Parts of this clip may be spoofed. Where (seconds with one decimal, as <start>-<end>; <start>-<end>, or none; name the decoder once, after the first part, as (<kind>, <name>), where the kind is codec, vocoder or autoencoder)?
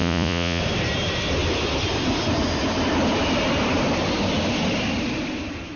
0.0-0.6 (vocoder, Vocos)